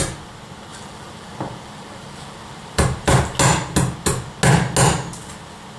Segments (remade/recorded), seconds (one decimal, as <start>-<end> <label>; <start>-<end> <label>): 0.0-0.7 recorded; 0.7-3.4 remade; 3.4-5.8 recorded